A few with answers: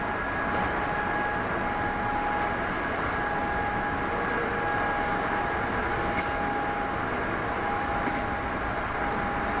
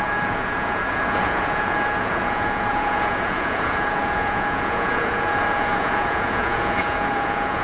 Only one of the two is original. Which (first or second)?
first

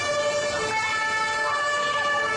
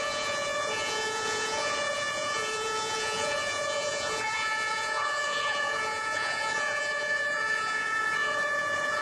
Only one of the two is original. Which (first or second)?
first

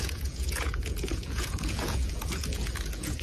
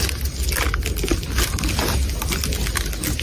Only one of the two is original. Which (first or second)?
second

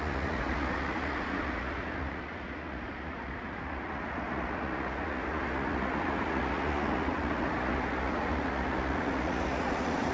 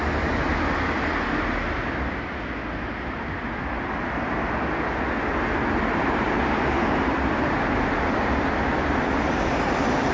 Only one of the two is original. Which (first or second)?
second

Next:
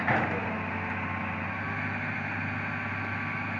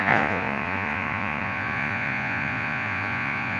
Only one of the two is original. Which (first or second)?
first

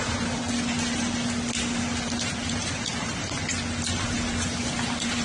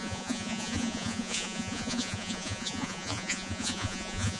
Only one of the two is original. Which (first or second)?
first